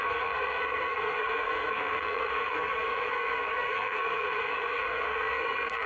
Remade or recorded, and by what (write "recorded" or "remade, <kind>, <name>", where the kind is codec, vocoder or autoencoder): remade, codec, SNAC